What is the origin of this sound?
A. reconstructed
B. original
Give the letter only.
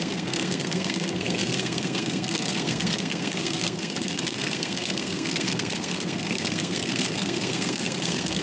A